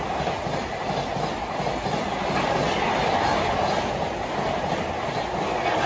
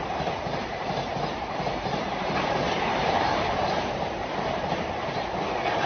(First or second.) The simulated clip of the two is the second